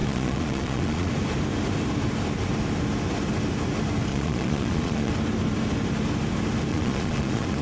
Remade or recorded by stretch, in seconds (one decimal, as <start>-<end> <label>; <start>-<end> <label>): 0.0-1.1 remade; 1.1-4.1 recorded; 4.1-5.1 remade; 5.1-6.7 recorded; 6.7-7.6 remade